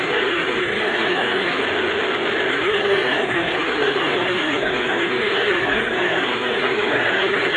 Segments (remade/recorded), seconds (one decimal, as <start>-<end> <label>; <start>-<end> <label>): 0.0-1.6 remade; 1.6-2.5 recorded; 2.5-7.6 remade